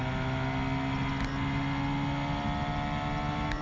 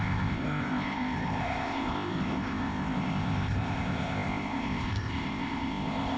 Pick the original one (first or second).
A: first